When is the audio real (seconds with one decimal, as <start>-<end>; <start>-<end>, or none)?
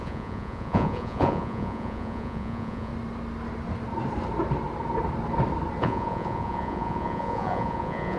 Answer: 2.9-5.8